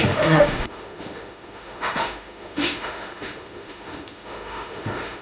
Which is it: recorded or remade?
remade